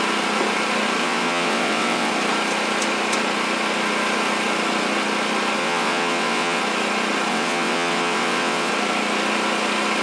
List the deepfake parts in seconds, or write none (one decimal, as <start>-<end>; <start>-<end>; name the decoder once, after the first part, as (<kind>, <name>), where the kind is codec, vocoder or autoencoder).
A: 1.0-2.1 (vocoder, WaveNeXt); 5.6-6.6; 7.3-8.7